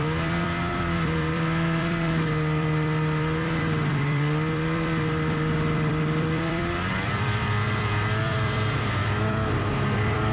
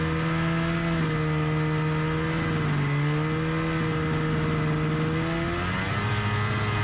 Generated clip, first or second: first